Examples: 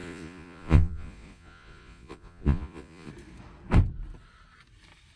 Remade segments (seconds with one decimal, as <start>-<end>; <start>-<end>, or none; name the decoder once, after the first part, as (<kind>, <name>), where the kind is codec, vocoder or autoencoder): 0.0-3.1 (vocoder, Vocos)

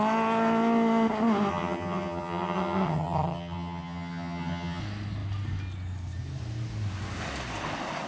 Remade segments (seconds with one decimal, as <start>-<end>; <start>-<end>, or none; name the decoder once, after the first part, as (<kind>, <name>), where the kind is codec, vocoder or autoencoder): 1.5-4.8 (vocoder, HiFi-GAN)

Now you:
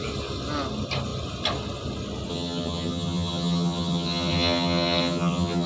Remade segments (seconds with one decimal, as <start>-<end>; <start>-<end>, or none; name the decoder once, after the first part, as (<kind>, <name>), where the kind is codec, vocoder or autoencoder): 2.3-5.7 (vocoder, HiFi-GAN)

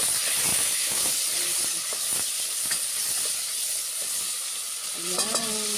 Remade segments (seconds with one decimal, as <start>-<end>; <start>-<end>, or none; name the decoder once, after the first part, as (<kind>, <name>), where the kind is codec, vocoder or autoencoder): 0.5-1.1 (autoencoder, DAC-VAE)

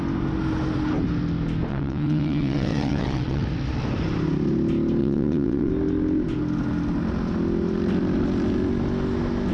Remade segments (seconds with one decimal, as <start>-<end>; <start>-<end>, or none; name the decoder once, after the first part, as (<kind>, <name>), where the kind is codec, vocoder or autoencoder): 1.7-3.4 (vocoder, WaveNeXt); 5.0-5.7

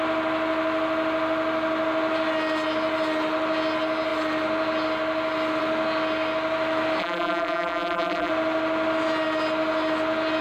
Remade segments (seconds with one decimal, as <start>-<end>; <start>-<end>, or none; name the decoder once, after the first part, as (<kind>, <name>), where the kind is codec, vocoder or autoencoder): 7.0-8.3 (vocoder, BigVGAN v2)

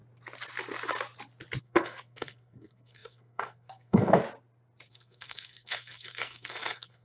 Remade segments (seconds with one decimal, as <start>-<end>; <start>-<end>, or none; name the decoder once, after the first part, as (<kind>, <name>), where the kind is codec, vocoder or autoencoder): 1.6-4.2 (codec, SNAC); 4.9-7.0

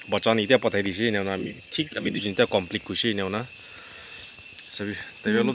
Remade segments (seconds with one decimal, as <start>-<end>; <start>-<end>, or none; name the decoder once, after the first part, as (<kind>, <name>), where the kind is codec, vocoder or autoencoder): 1.4-2.2 (vocoder, HiFi-GAN)